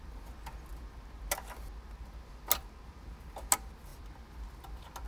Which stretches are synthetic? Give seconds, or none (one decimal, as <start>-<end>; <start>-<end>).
none